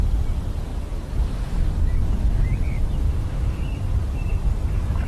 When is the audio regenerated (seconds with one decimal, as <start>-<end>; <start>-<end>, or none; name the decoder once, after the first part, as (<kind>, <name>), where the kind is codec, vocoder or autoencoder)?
3.0-3.6 (autoencoder, DAC-VAE)

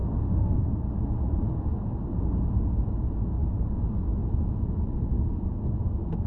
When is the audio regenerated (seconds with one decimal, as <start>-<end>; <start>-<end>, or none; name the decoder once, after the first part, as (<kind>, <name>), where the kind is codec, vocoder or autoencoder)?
0.0-0.7 (autoencoder, DAC-VAE)

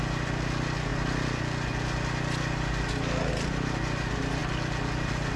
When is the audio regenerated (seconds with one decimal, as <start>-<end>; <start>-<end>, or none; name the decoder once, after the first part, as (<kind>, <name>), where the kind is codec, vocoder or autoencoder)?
none

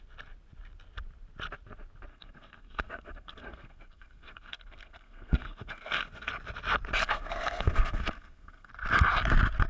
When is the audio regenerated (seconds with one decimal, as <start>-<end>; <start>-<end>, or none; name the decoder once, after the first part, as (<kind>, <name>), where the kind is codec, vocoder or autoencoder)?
2.1-6.3 (codec, SNAC); 7.0-8.7

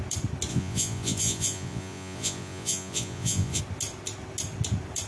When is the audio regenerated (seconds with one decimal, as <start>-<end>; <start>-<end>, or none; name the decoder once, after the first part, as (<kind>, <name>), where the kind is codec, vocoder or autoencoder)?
0.5-3.6 (vocoder, Vocos)

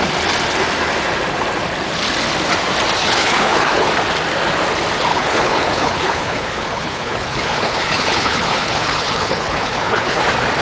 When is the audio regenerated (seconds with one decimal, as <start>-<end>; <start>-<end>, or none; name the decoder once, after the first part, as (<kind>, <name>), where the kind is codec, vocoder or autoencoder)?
3.0-3.9 (codec, HILCodec); 5.1-10.2

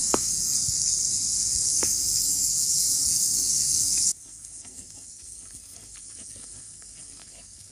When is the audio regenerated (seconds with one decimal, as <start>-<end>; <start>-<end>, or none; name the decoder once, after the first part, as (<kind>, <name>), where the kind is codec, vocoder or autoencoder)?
0.0-7.7 (codec, SNAC)